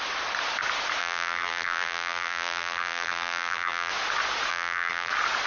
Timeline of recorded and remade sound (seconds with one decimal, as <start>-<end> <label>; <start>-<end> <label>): 0.0-1.0 recorded; 1.0-3.9 remade; 3.9-4.5 recorded; 4.5-5.1 remade; 5.1-5.5 recorded